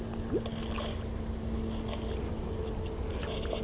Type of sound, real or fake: real